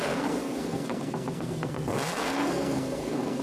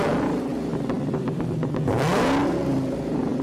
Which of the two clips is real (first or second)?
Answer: second